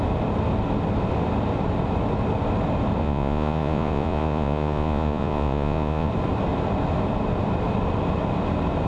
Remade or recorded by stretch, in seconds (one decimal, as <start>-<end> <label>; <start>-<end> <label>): 0.0-3.0 recorded; 3.0-6.1 remade; 6.1-8.9 recorded